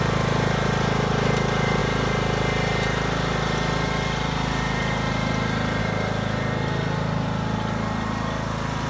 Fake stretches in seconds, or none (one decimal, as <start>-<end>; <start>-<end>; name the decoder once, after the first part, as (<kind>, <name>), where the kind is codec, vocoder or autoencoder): none